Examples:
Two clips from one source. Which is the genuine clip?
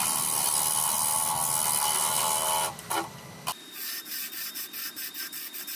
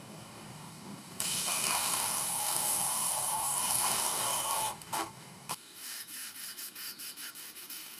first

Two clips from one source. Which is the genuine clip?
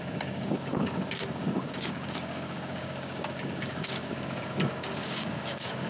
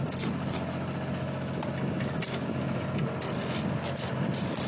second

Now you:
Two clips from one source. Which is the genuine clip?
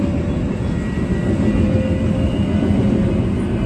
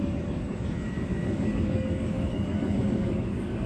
first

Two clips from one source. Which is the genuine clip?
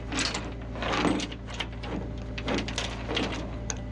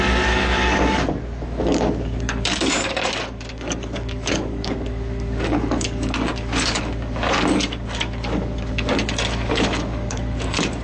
first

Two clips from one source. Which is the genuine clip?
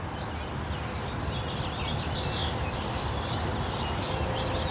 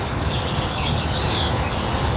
first